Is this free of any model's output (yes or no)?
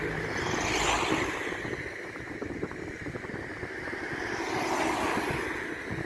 yes